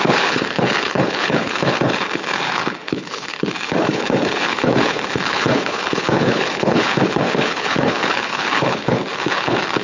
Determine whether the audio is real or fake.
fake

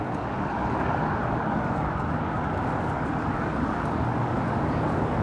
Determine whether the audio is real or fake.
fake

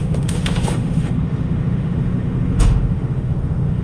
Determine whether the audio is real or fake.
fake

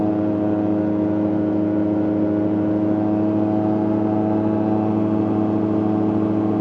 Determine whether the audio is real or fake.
real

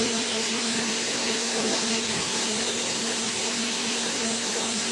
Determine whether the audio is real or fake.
fake